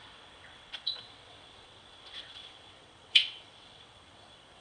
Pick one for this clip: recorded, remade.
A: remade